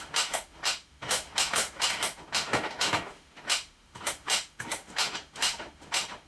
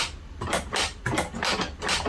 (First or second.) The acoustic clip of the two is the second